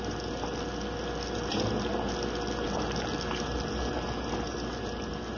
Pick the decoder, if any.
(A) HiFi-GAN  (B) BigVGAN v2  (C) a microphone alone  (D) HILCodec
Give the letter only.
C